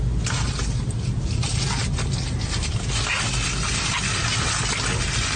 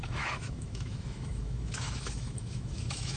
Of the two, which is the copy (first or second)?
second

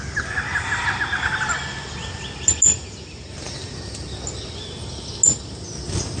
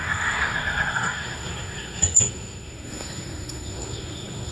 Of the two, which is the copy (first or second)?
second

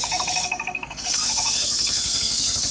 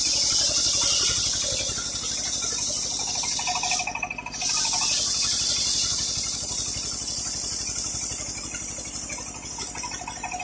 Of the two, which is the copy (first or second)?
first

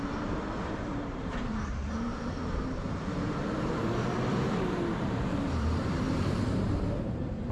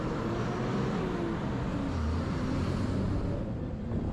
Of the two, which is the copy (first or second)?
first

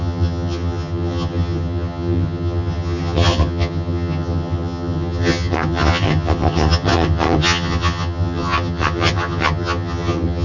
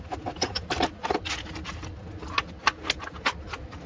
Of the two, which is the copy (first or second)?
first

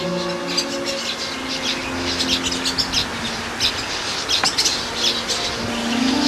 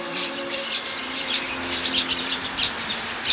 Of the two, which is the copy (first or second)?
second